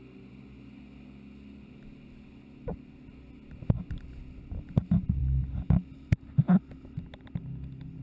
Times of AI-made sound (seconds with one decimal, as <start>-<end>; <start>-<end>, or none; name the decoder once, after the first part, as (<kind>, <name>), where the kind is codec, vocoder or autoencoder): none